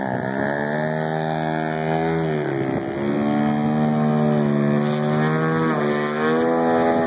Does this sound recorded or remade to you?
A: recorded